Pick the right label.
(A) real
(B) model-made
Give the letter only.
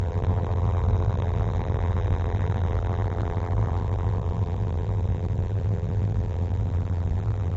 B